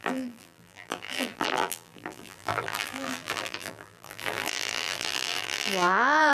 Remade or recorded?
remade